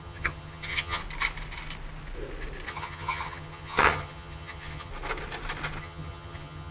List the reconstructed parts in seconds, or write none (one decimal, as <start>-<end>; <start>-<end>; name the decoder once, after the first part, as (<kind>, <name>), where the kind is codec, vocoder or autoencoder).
0.0-1.0 (vocoder, HiFi-GAN); 2.7-4.9; 5.8-6.7